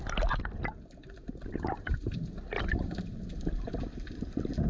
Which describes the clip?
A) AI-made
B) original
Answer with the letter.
B